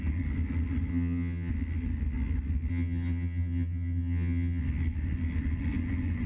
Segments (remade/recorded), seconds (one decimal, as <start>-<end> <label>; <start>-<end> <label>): 0.0-0.9 recorded; 0.9-1.5 remade; 1.5-2.7 recorded; 2.7-4.6 remade; 4.6-6.3 recorded